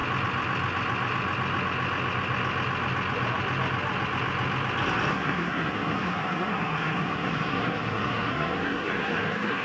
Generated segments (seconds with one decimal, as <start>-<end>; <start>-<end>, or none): 5.1-9.6

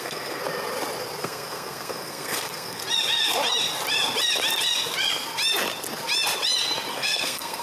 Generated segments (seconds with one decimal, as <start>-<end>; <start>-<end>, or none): 0.0-0.4; 1.2-2.8; 6.9-7.6

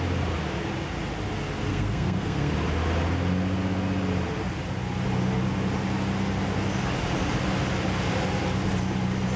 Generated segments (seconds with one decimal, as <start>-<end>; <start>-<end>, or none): 1.7-2.5

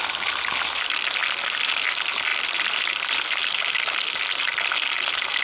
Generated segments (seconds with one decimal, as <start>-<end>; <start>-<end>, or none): none

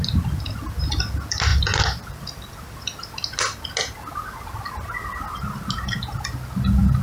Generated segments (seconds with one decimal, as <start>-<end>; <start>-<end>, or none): none